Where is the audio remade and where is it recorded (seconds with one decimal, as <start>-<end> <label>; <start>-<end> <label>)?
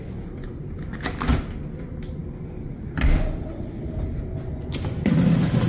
0.0-5.7 recorded